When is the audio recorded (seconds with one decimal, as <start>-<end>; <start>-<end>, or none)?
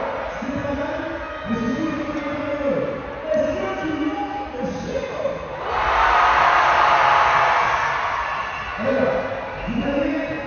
0.0-10.5